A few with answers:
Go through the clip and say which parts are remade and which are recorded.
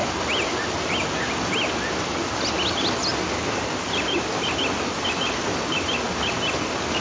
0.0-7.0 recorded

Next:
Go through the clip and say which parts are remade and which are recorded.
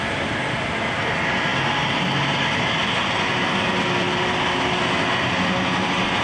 0.0-6.2 recorded